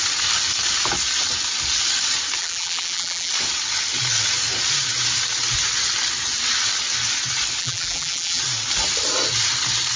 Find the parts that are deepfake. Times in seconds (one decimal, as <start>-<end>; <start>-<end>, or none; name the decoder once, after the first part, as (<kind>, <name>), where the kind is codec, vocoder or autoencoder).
2.4-3.3 (vocoder, BigVGAN v2); 7.6-8.4